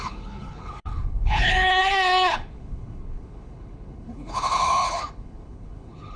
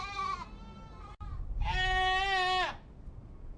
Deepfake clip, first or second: first